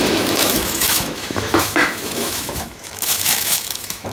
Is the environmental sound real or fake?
fake